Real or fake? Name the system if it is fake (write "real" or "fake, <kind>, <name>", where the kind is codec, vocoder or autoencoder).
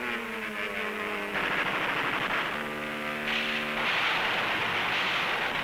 real